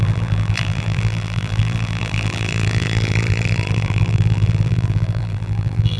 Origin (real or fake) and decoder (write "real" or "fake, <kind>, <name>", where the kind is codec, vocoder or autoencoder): fake, vocoder, BigVGAN v2